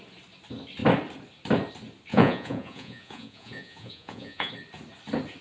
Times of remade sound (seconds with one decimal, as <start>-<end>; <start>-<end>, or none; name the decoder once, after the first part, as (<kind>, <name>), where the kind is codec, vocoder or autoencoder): 2.1-4.5 (vocoder, Vocos)